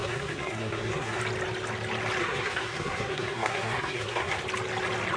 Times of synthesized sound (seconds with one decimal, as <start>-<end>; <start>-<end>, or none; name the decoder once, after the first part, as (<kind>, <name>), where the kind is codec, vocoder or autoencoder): 0.0-1.2 (codec, SNAC); 2.2-4.4

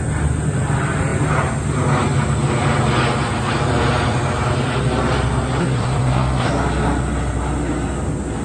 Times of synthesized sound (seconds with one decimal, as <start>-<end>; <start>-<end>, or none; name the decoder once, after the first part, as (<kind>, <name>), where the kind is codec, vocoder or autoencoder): 5.6-6.5 (codec, SNAC)

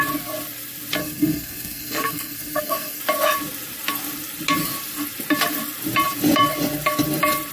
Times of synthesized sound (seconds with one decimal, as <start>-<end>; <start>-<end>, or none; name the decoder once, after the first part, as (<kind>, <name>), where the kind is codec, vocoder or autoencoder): 1.0-3.0 (codec, SNAC)

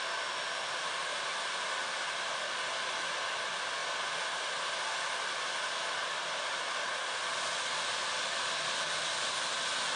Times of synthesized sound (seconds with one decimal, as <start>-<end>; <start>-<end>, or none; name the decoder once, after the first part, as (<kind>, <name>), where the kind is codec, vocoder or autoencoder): none

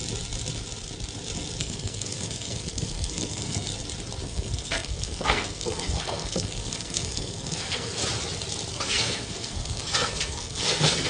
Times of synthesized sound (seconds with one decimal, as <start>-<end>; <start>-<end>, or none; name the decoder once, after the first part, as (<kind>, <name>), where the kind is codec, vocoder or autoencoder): 1.6-3.7 (codec, SNAC); 4.2-8.0; 8.7-11.1

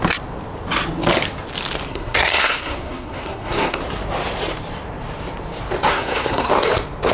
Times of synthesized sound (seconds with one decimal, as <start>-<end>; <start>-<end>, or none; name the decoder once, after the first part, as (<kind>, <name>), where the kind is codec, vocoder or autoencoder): 1.9-3.8 (codec, SNAC); 5.9-6.5